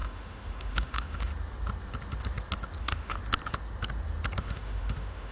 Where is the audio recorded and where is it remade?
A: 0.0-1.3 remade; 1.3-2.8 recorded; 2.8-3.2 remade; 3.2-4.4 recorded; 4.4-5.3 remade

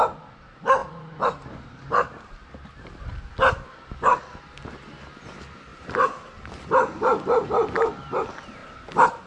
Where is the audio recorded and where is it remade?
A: 0.0-0.8 recorded; 0.8-3.1 remade; 3.1-5.7 recorded; 5.7-6.3 remade; 6.3-8.6 recorded; 8.6-9.3 remade